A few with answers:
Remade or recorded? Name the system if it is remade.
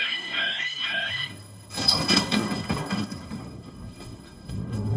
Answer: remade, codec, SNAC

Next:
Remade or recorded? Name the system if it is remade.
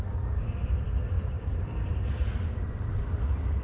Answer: recorded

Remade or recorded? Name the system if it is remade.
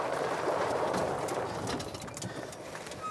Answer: recorded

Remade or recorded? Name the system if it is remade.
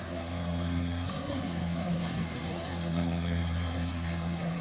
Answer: remade, codec, SNAC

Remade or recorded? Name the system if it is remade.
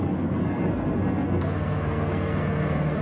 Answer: remade, codec, SNAC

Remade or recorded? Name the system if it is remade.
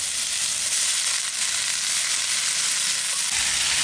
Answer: recorded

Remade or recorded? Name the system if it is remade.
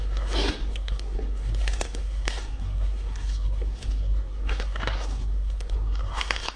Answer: remade, codec, SNAC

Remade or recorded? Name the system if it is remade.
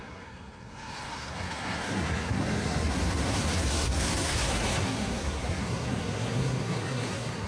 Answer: remade, codec, SNAC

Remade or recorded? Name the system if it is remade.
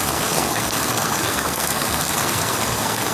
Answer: remade, codec, SNAC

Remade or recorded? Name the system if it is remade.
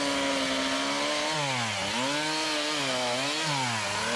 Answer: recorded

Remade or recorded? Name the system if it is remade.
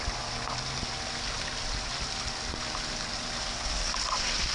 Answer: recorded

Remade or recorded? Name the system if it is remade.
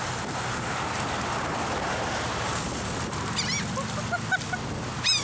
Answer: recorded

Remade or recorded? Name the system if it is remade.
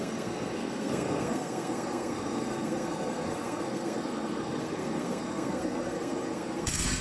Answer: remade, codec, SNAC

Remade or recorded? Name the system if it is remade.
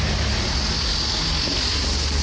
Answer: recorded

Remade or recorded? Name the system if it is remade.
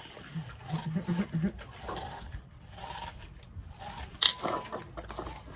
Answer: recorded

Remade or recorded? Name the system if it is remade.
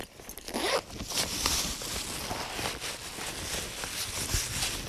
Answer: recorded